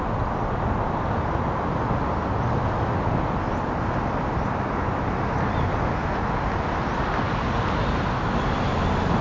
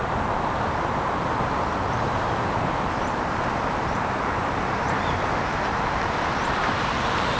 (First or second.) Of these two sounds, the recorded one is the first